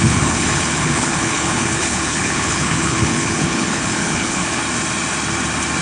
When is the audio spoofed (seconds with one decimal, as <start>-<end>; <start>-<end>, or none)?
0.0-4.6